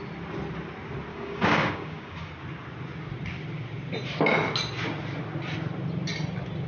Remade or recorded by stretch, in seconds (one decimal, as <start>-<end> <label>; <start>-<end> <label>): 0.0-1.1 recorded; 1.1-2.3 remade; 2.3-6.7 recorded